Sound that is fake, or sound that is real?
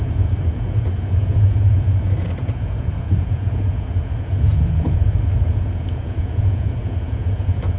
fake